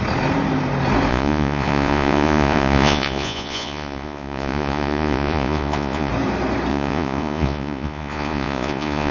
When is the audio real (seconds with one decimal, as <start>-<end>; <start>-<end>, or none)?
0.0-1.1; 6.1-6.7